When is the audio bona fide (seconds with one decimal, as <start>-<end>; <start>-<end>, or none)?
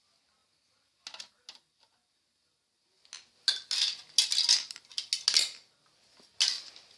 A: 0.0-7.0